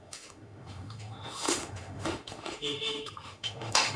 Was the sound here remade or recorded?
remade